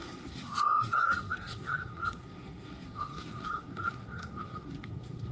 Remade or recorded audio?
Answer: remade